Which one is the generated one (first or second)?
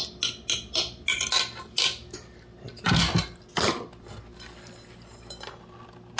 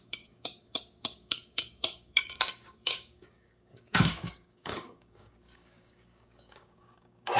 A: second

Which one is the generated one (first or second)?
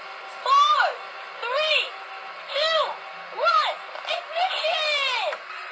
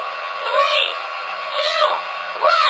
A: second